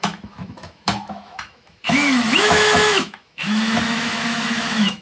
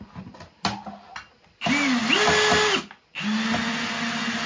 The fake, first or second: first